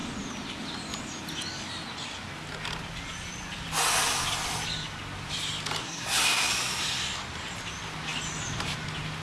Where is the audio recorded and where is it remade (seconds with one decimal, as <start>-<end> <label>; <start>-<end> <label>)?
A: 0.0-5.8 recorded; 5.8-6.5 remade; 6.5-9.2 recorded